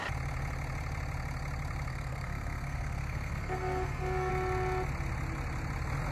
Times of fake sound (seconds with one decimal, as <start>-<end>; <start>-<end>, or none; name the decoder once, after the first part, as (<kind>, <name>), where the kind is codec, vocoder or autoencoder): 1.9-4.3 (codec, SNAC)